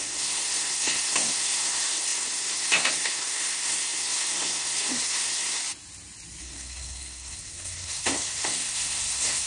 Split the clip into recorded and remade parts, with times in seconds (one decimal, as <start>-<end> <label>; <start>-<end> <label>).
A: 0.0-5.6 remade; 5.6-6.4 recorded; 6.4-9.5 remade